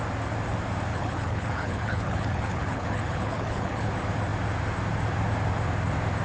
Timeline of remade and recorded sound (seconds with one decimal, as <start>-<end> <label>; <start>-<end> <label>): 0.0-0.9 recorded; 0.9-3.9 remade; 3.9-6.2 recorded

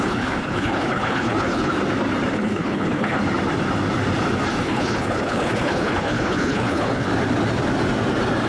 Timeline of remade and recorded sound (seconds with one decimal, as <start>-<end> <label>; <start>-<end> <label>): 0.0-1.7 remade; 1.7-2.3 recorded; 2.3-3.2 remade; 3.2-4.6 recorded; 4.6-7.1 remade; 7.1-8.5 recorded

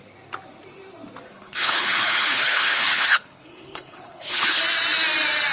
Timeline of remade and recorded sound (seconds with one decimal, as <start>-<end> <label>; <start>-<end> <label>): 0.0-1.3 recorded; 1.3-4.6 remade; 4.6-5.5 recorded

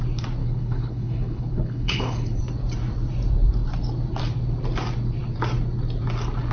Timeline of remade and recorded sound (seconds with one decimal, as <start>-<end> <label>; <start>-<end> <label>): 0.0-0.4 recorded; 0.4-2.4 remade; 2.4-6.5 recorded

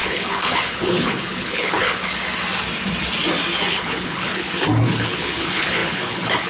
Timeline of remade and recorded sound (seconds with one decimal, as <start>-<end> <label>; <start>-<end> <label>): 0.0-2.1 remade; 2.1-3.7 recorded; 3.7-6.5 remade

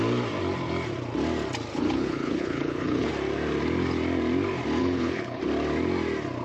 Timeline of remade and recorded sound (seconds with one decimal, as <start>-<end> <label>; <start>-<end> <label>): 0.0-1.7 recorded; 1.7-3.1 remade; 3.1-4.8 recorded; 4.8-5.4 remade; 5.4-6.4 recorded

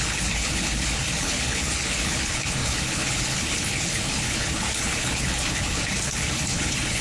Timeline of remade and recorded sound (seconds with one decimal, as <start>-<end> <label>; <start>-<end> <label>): 0.0-7.0 remade

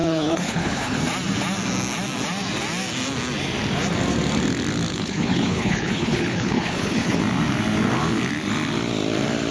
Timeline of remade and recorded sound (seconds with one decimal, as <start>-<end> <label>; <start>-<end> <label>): 0.0-1.0 remade; 1.0-4.9 recorded; 4.9-7.2 remade; 7.2-9.5 recorded